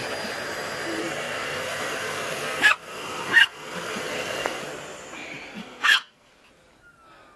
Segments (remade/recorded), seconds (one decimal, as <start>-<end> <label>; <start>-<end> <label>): 0.0-1.0 recorded; 1.0-4.6 remade; 4.6-5.6 recorded; 5.6-6.3 remade; 6.3-7.4 recorded